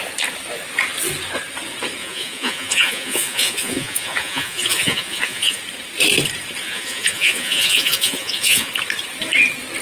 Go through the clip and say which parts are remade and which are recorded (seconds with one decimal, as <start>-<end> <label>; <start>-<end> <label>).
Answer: 0.0-2.0 recorded; 2.0-5.6 remade; 5.6-6.6 recorded; 6.6-8.7 remade; 8.7-9.8 recorded